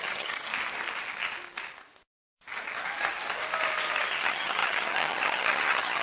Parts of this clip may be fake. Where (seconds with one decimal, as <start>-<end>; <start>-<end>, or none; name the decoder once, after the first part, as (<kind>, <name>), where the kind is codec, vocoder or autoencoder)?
0.0-0.5 (vocoder, HiFi-GAN); 4.1-6.0